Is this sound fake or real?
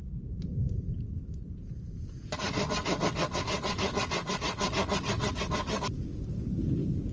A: real